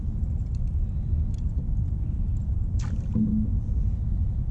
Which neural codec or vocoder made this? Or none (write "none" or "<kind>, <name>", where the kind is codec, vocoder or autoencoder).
none